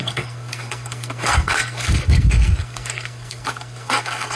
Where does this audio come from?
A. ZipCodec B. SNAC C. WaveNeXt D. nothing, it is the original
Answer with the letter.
B